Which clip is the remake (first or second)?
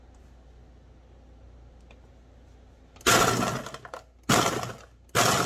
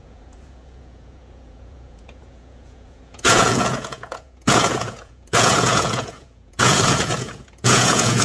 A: second